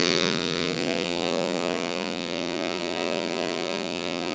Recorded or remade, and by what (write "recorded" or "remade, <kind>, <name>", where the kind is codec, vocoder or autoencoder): remade, vocoder, BigVGAN v2